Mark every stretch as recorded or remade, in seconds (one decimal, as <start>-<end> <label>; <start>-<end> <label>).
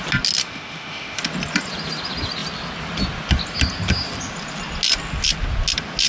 0.0-0.4 recorded; 0.4-1.2 remade; 1.2-6.1 recorded